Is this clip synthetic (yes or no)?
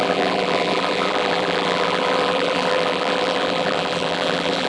yes